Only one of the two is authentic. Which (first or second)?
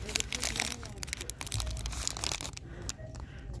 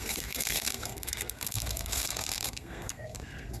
first